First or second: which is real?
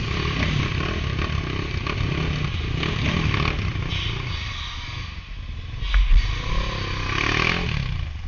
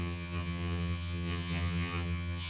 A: first